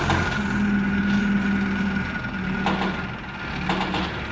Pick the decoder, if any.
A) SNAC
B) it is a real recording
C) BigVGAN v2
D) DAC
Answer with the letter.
B